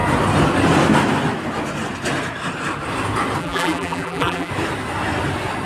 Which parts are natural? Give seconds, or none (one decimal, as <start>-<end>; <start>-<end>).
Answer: 0.0-3.4; 4.5-5.7